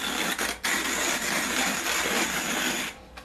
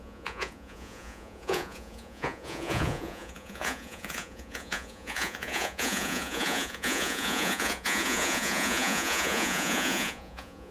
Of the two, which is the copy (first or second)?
second